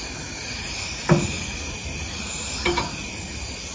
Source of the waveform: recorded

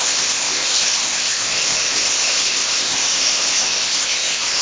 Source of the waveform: remade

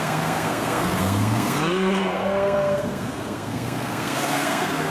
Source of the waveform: remade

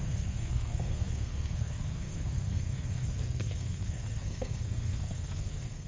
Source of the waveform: remade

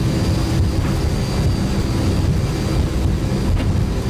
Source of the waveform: recorded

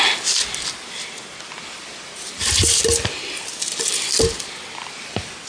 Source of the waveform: recorded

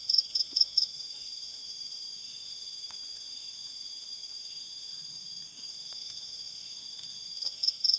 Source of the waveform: remade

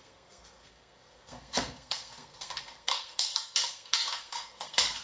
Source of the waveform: remade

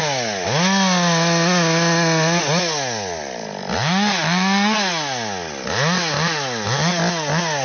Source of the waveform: recorded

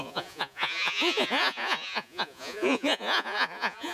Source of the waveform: remade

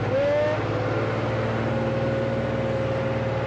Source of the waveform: recorded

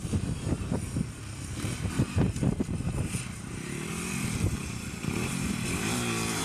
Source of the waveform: remade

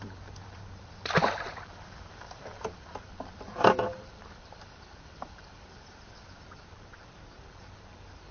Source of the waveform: remade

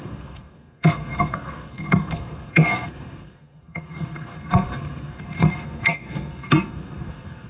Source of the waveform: remade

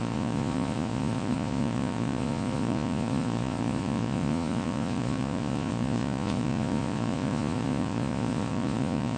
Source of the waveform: remade